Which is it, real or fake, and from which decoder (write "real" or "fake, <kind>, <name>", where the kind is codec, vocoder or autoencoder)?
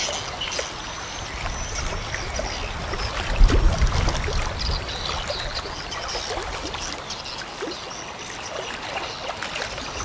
real